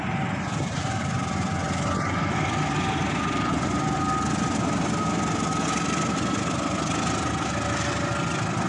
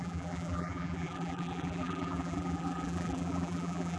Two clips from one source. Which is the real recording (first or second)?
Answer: first